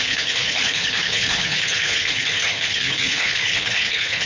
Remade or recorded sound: remade